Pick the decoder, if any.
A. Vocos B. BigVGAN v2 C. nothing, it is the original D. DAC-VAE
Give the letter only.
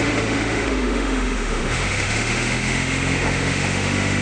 D